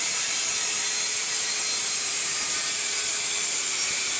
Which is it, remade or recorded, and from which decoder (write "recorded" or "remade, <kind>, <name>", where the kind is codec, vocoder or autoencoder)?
remade, vocoder, BigVGAN v2